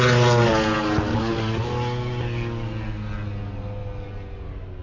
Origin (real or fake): real